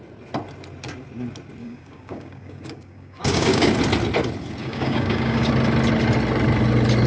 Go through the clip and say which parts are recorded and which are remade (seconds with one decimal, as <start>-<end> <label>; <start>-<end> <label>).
0.0-1.6 recorded; 1.6-3.7 remade; 3.7-4.6 recorded; 4.6-5.5 remade; 5.5-7.1 recorded